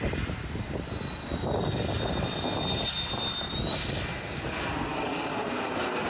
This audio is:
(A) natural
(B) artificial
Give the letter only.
A